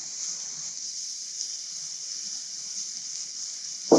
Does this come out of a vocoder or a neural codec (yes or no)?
no